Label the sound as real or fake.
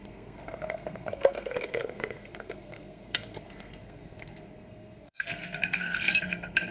fake